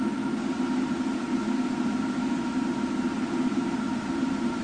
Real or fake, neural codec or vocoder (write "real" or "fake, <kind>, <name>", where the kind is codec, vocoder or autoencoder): real